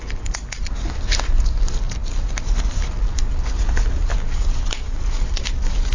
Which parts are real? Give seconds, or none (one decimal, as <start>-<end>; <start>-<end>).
0.0-5.9